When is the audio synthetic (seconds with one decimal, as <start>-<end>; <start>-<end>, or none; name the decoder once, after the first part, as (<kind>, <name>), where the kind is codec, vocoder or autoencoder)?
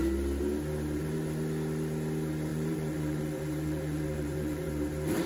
2.5-4.7 (vocoder, BigVGAN v2)